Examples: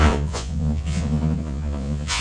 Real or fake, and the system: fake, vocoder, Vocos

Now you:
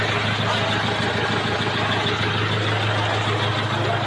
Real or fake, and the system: real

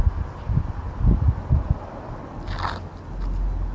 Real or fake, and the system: real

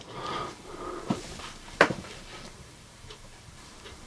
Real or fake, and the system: fake, vocoder, BigVGAN v2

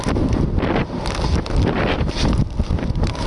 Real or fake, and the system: real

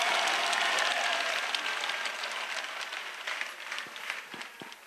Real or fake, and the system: real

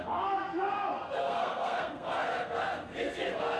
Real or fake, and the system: fake, codec, SNAC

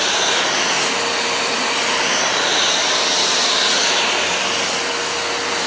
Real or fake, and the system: real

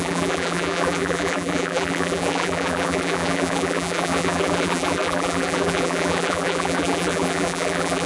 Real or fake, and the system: fake, vocoder, BigVGAN v2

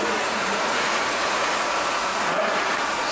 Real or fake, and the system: fake, vocoder, Vocos